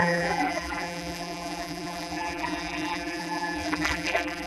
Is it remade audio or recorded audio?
remade